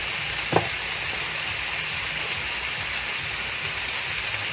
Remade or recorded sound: recorded